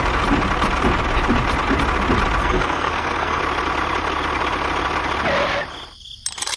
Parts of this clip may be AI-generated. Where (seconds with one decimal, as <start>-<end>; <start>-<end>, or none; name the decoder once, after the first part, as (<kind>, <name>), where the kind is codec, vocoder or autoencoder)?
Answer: 2.4-3.4 (codec, SNAC)